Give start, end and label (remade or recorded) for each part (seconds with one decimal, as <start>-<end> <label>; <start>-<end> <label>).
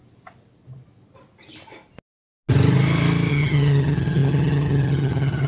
0.0-3.3 recorded; 3.3-5.5 remade